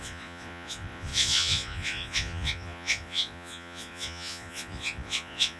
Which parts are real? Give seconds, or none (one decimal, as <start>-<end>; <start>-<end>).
none